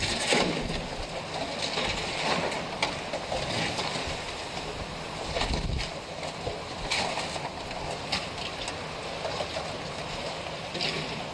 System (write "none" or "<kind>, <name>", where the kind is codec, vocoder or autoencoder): none